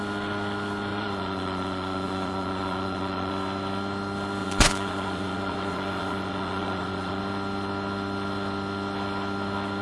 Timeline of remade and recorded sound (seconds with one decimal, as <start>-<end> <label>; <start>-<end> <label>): 0.0-0.9 recorded; 0.9-3.3 remade; 3.3-4.4 recorded; 4.4-7.2 remade; 7.2-9.8 recorded